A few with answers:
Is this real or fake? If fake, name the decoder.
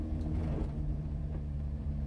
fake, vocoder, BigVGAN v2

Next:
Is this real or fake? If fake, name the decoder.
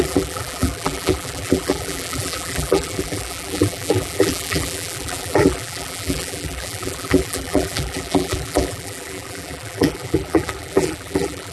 fake, vocoder, BigVGAN v2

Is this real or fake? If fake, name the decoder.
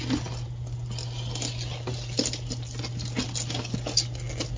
real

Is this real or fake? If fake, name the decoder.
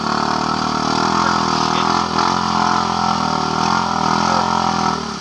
real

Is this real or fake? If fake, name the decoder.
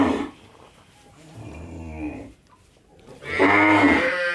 fake, vocoder, BigVGAN v2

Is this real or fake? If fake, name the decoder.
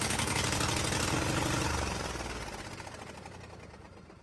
real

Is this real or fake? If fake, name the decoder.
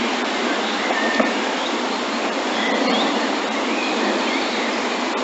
fake, vocoder, BigVGAN v2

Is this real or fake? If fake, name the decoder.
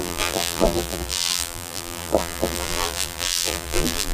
fake, vocoder, BigVGAN v2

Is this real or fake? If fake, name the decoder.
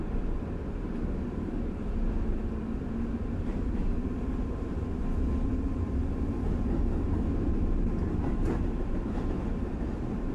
fake, vocoder, BigVGAN v2